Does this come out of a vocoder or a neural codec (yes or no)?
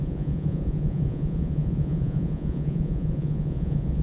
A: yes